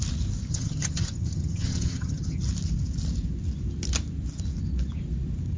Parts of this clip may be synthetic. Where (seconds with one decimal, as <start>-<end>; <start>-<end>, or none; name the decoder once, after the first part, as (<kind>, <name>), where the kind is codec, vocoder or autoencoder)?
0.5-2.4 (vocoder, HiFi-GAN)